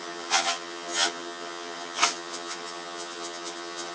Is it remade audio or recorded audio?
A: remade